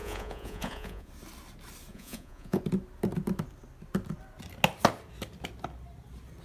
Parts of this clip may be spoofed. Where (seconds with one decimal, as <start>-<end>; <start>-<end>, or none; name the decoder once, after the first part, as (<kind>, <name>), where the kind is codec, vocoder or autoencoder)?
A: 0.0-1.1 (vocoder, Vocos); 1.9-2.6